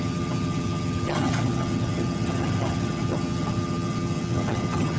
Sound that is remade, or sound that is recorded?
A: remade